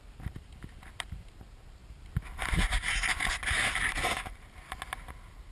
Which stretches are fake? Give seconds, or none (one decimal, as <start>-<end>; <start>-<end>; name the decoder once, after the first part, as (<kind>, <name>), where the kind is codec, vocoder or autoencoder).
none